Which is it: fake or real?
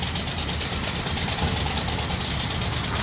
real